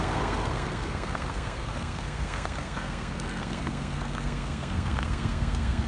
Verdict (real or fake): fake